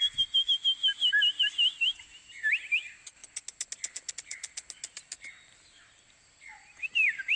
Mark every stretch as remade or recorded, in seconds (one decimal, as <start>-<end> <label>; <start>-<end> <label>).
0.0-7.4 recorded